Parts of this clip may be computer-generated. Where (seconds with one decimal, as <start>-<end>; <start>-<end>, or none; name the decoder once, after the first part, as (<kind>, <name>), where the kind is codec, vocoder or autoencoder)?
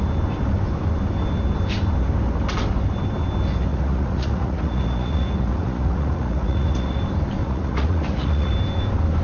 3.7-7.0 (vocoder, Vocos); 7.4-8.5